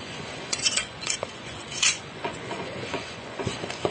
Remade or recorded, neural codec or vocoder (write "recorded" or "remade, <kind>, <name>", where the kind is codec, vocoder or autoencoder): remade, vocoder, Vocos